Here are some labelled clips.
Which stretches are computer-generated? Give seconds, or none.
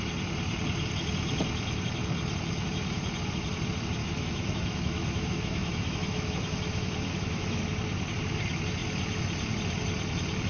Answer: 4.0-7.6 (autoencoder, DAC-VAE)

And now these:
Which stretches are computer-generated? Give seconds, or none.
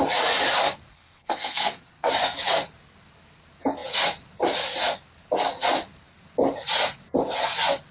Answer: 0.9-2.1 (codec, SNAC)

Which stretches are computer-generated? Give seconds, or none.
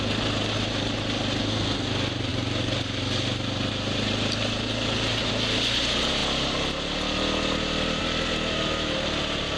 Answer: 1.4-1.9 (codec, SNAC)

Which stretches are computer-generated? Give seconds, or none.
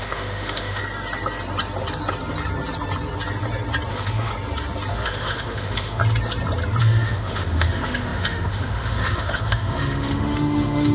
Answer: 0.0-0.8 (autoencoder, DAC-VAE); 3.9-4.3; 4.9-6.0; 6.8-10.9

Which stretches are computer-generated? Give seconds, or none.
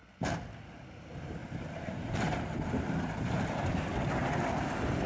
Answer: 1.4-3.3 (vocoder, BigVGAN v2)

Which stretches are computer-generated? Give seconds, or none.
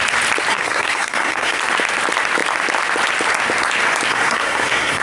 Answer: 0.5-1.6 (codec, SNAC); 4.1-5.0